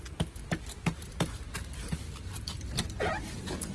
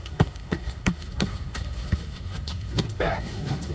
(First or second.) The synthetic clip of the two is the second